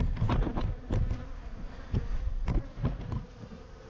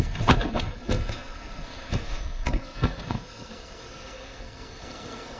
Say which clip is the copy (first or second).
second